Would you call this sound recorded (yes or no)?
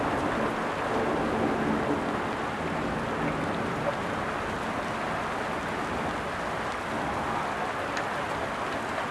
yes